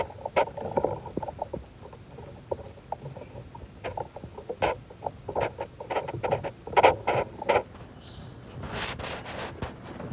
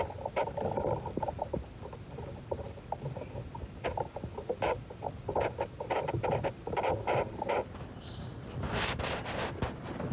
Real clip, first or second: first